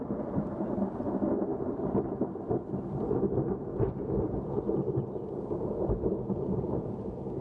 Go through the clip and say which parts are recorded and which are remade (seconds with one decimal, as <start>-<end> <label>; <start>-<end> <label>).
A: 0.0-7.4 remade